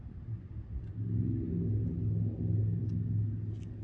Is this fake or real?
real